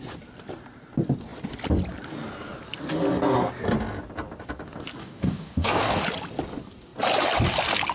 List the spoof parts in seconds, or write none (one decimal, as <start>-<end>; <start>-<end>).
5.0-6.0